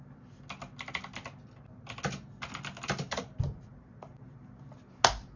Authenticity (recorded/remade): recorded